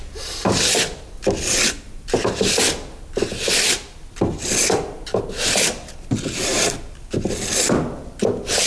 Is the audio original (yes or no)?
yes